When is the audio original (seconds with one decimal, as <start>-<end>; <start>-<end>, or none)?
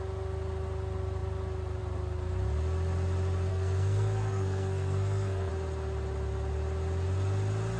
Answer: 0.0-3.5; 5.5-7.8